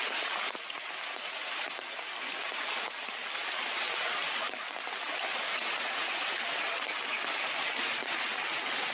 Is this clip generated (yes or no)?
no